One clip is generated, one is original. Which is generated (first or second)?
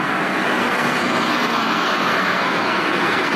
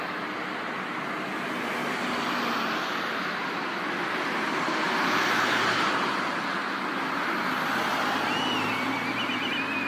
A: first